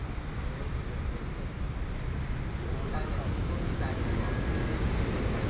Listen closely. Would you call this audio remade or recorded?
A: recorded